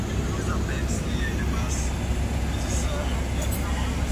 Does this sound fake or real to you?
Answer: real